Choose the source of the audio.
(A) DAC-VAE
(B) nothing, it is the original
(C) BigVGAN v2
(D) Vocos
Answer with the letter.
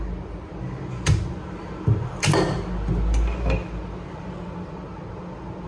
B